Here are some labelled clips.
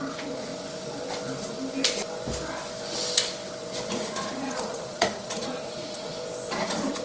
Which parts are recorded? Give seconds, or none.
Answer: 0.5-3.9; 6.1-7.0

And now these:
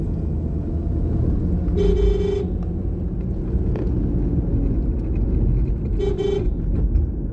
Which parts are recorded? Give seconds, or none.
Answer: 0.0-7.3

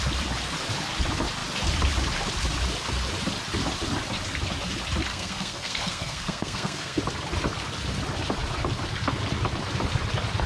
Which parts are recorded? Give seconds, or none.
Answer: 0.0-5.1; 7.0-10.5

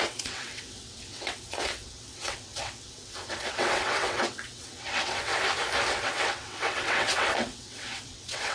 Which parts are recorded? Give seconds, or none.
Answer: 5.3-5.9

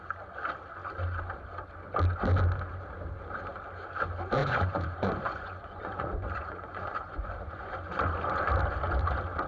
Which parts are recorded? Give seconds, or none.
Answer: 0.0-4.4; 7.7-9.5

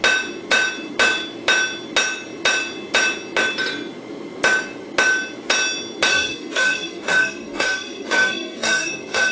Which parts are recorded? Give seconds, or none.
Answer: 0.0-6.1

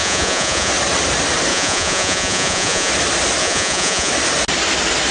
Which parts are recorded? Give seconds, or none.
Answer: 0.7-1.5; 2.9-3.4; 4.1-5.1